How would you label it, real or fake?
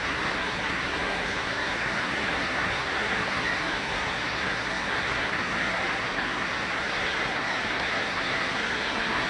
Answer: fake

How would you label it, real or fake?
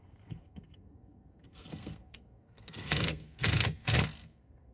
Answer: fake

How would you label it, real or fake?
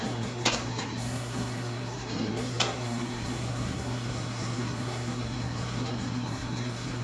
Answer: fake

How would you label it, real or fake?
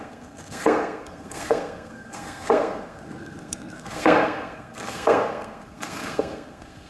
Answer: fake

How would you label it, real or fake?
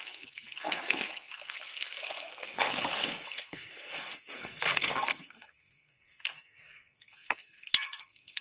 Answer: fake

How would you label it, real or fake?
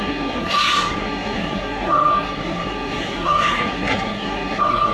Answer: fake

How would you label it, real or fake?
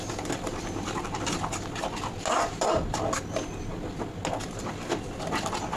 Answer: real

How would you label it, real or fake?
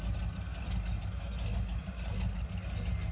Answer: real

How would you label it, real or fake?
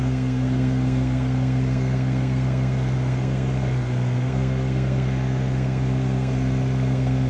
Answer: fake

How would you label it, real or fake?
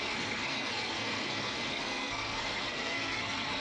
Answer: fake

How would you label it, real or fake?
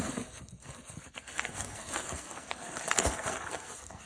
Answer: fake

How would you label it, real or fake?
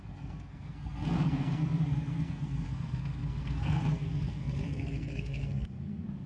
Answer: fake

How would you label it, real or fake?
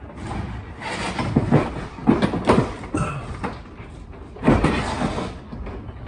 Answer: real